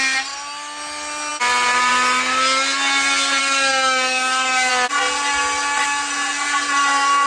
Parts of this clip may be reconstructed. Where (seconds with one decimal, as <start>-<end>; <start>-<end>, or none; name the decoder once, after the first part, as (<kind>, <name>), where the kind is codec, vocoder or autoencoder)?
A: 3.4-4.7 (codec, DAC)